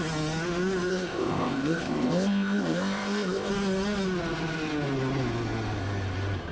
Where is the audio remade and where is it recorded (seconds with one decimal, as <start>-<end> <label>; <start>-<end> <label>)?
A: 0.0-0.9 recorded; 0.9-3.5 remade; 3.5-6.5 recorded